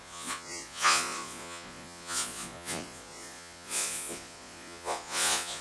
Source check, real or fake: fake